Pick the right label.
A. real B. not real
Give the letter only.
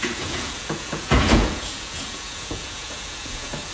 B